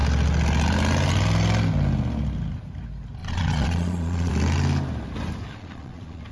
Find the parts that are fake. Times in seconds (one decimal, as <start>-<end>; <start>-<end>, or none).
3.2-4.3; 5.5-6.3

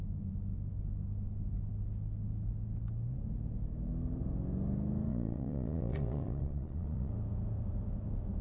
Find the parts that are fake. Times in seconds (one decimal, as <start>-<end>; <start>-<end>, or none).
5.1-7.1

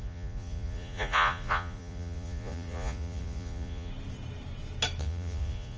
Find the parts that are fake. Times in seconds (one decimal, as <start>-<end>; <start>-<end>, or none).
0.0-3.9; 5.0-5.8

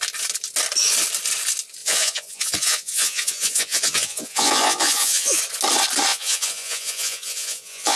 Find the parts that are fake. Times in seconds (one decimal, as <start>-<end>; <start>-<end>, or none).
1.8-5.4; 6.1-8.0